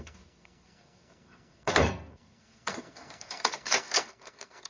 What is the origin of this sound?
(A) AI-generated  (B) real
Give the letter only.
A